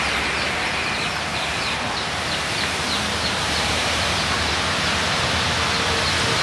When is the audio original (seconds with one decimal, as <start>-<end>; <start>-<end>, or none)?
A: 0.0-1.3; 4.6-6.4